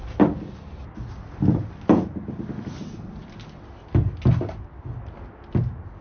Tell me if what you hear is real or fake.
real